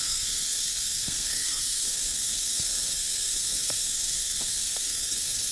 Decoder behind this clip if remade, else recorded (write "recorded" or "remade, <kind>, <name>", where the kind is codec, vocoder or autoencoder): remade, codec, SNAC